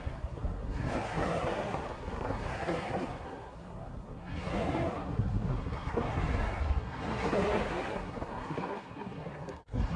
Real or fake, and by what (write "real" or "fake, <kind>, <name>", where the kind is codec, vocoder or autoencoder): fake, codec, SNAC